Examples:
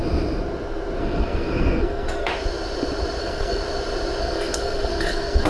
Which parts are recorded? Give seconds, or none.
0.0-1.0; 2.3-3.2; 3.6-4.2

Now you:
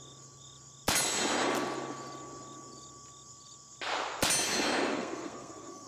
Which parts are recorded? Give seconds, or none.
0.0-4.9

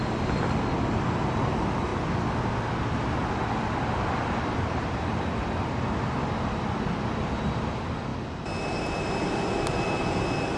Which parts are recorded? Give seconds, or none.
0.0-10.6